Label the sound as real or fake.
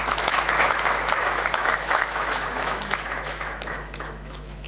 fake